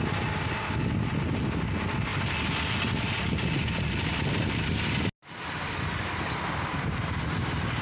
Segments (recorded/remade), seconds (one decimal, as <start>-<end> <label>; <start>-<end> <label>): 0.0-7.8 recorded